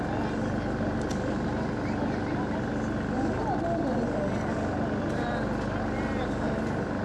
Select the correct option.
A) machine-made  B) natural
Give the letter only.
B